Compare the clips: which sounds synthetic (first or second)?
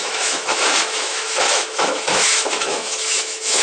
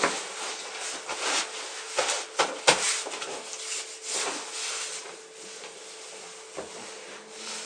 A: first